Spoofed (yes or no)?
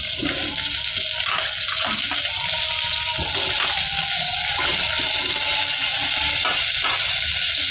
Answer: no